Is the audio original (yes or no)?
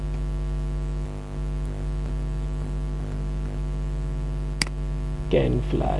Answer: yes